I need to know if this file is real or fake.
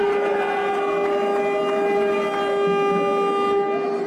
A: real